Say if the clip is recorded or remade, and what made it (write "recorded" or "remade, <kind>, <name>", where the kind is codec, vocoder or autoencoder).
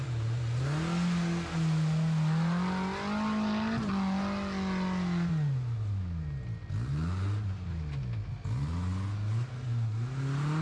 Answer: recorded